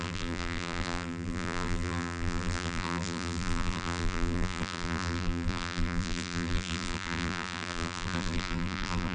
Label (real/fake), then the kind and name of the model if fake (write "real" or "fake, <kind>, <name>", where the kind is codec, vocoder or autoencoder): fake, vocoder, BigVGAN v2